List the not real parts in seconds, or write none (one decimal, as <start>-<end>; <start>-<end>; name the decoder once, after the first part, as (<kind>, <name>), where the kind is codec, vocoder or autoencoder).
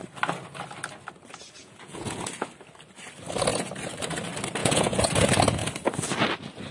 1.6-2.3 (vocoder, Vocos); 4.6-5.1